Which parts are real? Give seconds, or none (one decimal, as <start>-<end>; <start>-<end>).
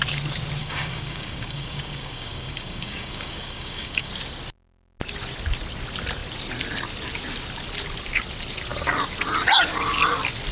0.0-0.6; 4.1-10.5